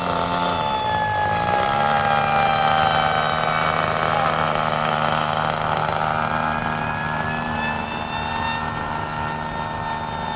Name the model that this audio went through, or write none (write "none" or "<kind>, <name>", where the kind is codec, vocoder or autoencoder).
none